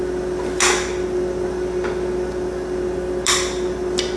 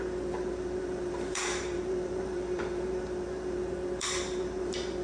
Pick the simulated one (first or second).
second